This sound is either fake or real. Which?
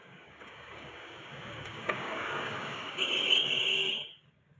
fake